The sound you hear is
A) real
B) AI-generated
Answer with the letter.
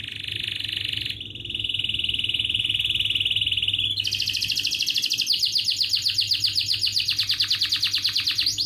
A